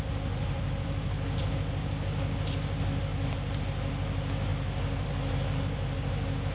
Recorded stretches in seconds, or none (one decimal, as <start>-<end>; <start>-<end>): 0.0-0.4; 1.5-3.1; 3.6-4.5; 6.0-6.5